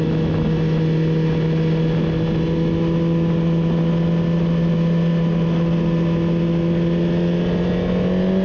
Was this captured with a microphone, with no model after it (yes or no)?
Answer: yes